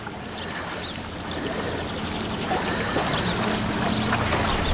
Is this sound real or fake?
real